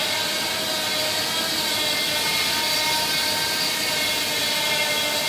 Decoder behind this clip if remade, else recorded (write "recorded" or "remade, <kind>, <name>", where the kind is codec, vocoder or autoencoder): recorded